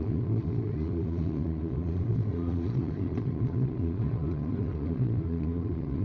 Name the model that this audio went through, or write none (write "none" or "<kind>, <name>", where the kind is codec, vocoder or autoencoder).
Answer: vocoder, Vocos